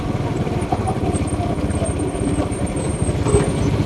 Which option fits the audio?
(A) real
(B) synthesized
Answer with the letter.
B